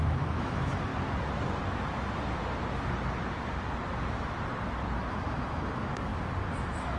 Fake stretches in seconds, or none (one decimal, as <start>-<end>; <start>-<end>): 0.0-0.9; 5.1-6.1; 6.6-7.0